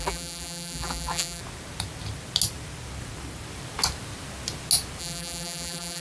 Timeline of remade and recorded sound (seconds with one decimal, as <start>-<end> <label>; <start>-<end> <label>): 0.0-1.4 remade; 1.4-5.0 recorded; 5.0-6.0 remade